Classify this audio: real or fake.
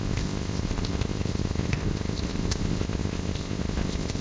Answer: fake